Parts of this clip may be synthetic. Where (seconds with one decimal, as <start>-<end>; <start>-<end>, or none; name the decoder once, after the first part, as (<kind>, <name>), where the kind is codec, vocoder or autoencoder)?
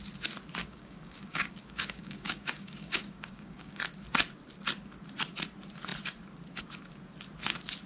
0.6-3.8 (codec, DAC)